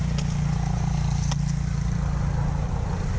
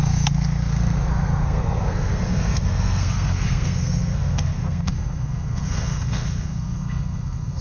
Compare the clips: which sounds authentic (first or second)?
first